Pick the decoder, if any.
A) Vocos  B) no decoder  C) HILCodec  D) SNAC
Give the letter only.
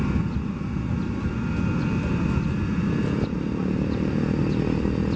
B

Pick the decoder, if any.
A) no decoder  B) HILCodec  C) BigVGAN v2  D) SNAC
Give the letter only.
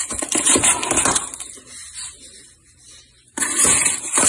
C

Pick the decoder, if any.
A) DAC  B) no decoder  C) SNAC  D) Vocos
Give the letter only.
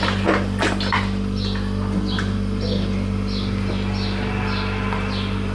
B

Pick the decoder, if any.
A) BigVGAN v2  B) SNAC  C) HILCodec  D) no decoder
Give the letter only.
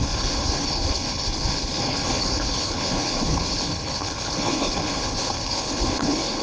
C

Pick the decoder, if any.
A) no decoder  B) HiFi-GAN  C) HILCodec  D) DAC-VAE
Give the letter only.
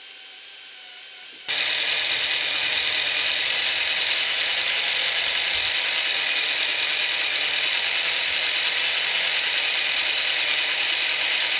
A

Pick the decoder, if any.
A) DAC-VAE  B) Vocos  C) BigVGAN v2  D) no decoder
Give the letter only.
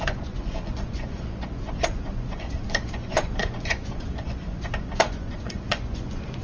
B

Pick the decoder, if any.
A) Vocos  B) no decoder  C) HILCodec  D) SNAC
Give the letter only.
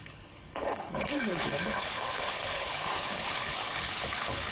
C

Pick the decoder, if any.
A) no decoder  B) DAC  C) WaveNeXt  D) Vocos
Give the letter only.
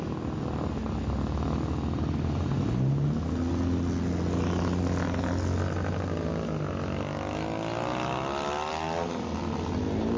A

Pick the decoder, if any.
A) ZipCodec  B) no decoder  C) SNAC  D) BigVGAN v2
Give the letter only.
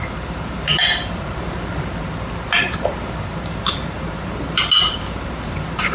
D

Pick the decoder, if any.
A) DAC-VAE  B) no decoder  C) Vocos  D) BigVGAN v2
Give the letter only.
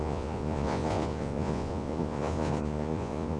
C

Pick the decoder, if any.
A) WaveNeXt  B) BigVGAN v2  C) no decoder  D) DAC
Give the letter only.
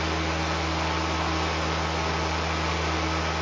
C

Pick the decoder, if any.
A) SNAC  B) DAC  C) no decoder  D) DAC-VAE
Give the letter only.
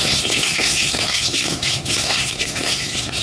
A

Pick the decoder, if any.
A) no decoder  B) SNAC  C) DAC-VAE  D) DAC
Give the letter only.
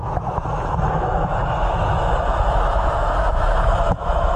C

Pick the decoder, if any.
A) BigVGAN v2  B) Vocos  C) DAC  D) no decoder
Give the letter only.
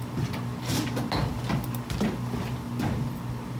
D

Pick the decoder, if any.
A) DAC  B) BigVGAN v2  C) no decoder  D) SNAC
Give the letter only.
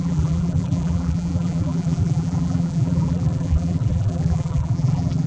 B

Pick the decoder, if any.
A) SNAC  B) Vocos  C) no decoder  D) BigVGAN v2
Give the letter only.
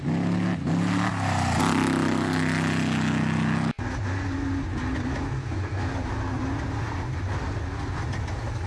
C